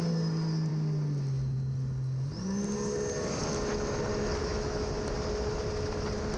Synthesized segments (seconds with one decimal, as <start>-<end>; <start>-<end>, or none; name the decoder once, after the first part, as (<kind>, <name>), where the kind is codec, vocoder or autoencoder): 4.4-4.9 (autoencoder, DAC-VAE)